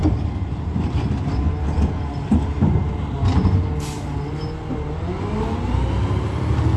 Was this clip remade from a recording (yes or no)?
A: no